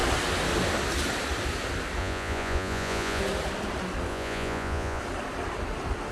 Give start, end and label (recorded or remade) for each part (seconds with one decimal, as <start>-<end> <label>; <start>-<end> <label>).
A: 0.0-2.0 recorded; 2.0-3.2 remade; 3.2-4.1 recorded; 4.1-5.0 remade; 5.0-6.1 recorded